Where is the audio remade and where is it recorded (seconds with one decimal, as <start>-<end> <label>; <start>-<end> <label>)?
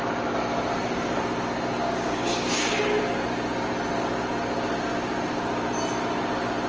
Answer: 0.0-1.8 recorded; 1.8-3.0 remade; 3.0-6.7 recorded